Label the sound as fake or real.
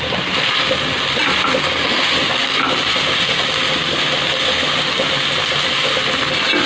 real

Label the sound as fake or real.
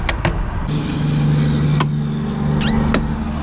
real